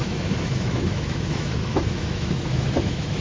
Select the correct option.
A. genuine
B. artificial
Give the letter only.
B